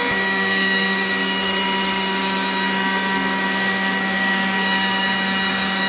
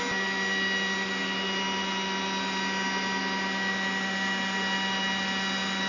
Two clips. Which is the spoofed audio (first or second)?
first